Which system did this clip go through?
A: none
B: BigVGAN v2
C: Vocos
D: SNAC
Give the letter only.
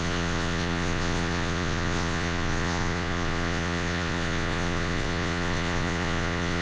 C